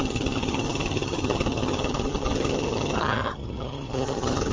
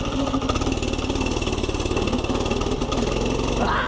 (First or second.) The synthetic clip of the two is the first